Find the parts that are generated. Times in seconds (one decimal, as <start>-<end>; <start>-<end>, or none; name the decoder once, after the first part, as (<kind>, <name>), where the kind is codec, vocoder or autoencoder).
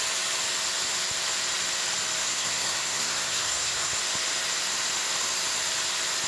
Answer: 2.2-4.0 (codec, SNAC)